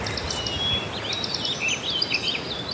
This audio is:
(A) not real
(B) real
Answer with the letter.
B